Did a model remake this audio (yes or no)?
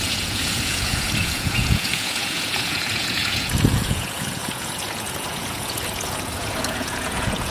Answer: yes